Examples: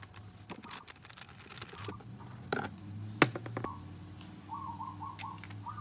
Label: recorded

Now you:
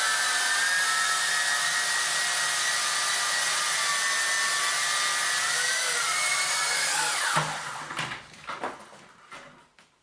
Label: recorded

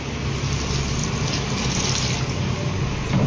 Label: recorded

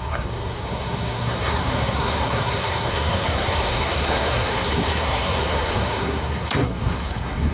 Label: remade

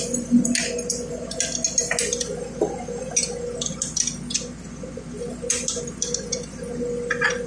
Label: recorded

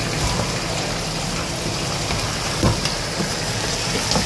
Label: recorded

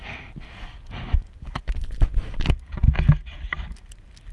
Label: recorded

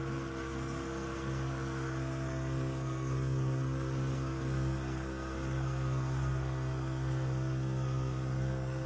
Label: remade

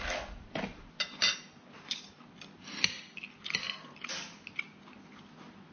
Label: recorded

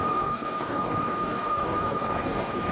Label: remade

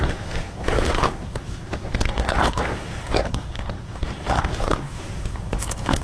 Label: remade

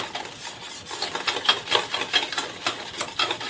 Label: recorded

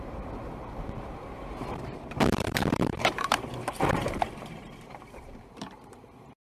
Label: remade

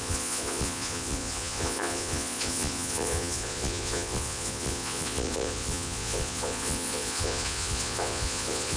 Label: remade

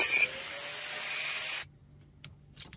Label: recorded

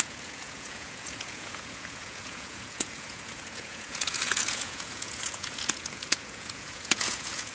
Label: remade